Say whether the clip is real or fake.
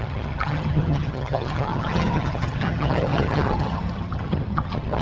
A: fake